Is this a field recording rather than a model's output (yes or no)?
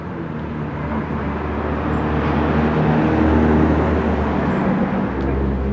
yes